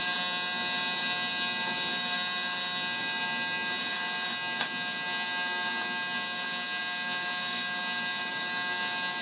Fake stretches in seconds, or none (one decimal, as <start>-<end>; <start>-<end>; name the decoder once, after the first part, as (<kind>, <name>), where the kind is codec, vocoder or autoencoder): none